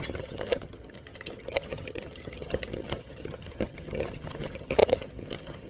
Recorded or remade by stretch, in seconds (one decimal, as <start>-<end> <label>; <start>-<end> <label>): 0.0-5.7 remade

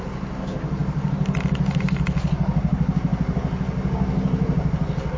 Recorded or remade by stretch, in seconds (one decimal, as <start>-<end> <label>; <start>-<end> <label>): 0.0-5.2 recorded

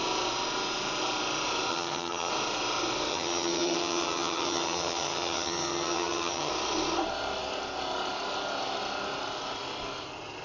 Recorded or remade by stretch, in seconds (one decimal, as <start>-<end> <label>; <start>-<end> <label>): 0.0-1.7 recorded; 1.7-2.3 remade; 2.3-3.1 recorded; 3.1-6.5 remade; 6.5-10.4 recorded

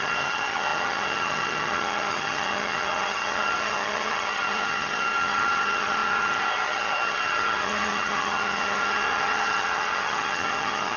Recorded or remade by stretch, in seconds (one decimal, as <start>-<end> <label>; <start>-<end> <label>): 0.0-11.0 remade

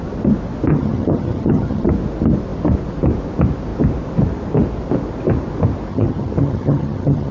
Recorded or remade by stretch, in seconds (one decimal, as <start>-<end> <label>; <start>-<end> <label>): 0.0-0.7 recorded; 0.7-1.9 remade; 1.9-5.9 recorded; 5.9-7.3 remade

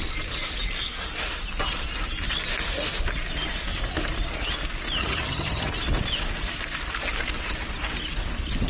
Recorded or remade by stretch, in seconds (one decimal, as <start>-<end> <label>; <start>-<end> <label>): 0.0-5.0 recorded; 5.0-5.7 remade; 5.7-8.7 recorded

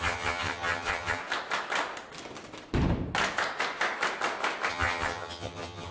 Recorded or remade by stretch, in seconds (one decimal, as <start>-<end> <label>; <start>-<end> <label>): 0.0-1.2 remade; 1.2-4.7 recorded; 4.7-5.9 remade